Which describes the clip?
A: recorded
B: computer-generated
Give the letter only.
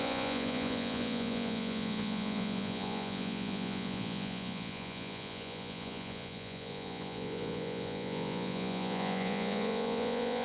B